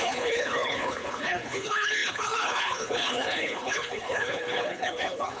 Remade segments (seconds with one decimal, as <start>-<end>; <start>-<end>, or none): 0.0-5.4